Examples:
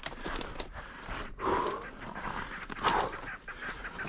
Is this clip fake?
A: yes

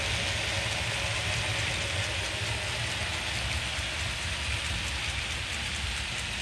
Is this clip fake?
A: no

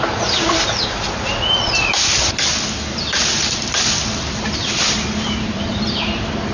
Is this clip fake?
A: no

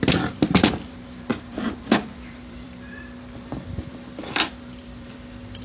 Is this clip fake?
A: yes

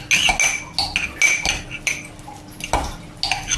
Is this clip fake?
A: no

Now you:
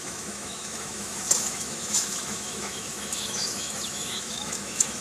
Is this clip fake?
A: yes